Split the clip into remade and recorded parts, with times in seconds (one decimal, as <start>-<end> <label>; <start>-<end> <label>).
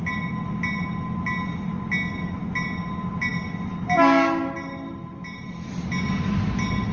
0.0-6.9 recorded